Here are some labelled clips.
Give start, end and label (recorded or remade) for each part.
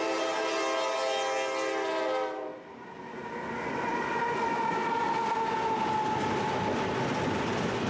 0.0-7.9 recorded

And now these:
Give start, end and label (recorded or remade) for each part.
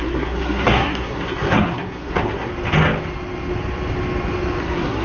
0.0-2.5 remade; 2.5-4.6 recorded; 4.6-5.0 remade